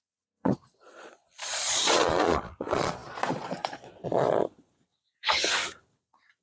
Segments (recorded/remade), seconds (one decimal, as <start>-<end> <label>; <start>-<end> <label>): 0.0-4.9 remade; 4.9-6.0 recorded; 6.0-6.4 remade